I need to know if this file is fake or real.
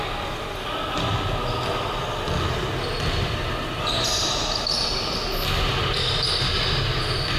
real